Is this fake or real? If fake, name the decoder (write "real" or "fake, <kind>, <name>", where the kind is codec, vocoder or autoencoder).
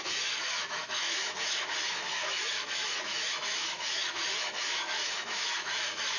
fake, autoencoder, DAC-VAE